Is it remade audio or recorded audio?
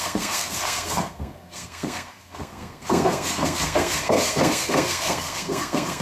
remade